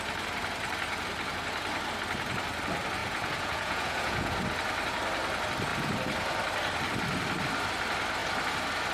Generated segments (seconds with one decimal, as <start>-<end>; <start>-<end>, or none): 3.0-4.3